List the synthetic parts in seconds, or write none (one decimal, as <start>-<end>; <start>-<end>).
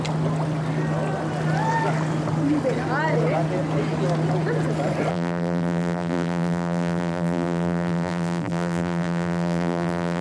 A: 5.1-10.2